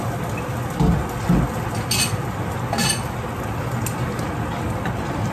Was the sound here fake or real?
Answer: real